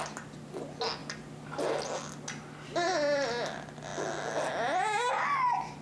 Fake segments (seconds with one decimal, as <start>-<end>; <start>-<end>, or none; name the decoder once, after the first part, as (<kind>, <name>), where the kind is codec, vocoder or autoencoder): none